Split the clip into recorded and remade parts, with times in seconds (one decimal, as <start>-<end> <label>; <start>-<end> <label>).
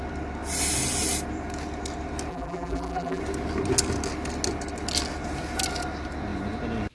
0.0-2.3 recorded; 2.3-3.2 remade; 3.2-6.9 recorded